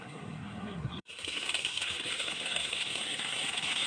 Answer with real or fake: fake